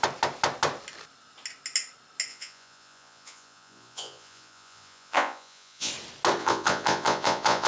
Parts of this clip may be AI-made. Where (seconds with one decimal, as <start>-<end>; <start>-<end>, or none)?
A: 2.3-5.9; 6.4-7.7